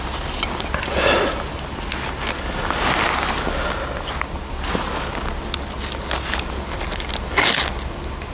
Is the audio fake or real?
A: real